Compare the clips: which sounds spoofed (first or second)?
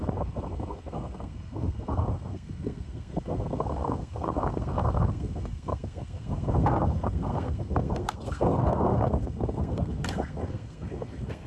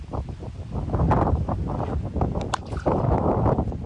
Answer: first